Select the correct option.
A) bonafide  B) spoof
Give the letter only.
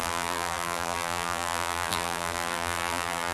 B